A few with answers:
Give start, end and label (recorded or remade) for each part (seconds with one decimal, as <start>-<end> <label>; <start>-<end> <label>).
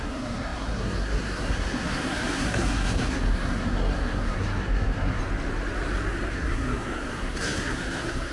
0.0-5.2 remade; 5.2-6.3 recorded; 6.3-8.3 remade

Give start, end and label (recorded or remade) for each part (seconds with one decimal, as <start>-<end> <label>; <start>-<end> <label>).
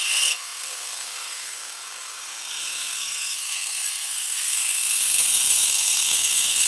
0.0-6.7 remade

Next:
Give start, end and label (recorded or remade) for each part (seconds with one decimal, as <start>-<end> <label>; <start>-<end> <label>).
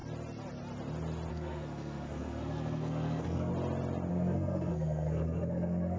0.0-1.3 recorded; 1.3-3.5 remade; 3.5-4.1 recorded; 4.1-6.0 remade